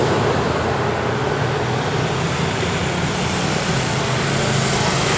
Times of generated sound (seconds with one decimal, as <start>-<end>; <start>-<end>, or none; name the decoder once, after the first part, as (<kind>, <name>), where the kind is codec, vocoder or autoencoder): none